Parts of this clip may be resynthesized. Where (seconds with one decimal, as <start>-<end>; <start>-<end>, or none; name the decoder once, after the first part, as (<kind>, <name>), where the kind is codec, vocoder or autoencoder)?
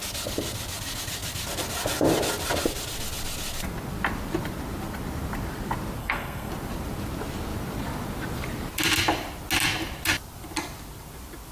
6.0-6.5 (codec, SNAC)